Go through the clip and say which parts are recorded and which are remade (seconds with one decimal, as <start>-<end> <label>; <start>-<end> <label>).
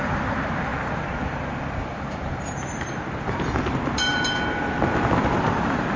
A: 0.0-6.0 remade